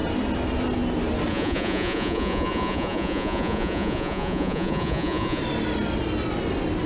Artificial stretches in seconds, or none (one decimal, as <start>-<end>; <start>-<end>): 1.3-5.4